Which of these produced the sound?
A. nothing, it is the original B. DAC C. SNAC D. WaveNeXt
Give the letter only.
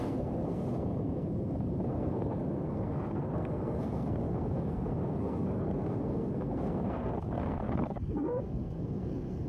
C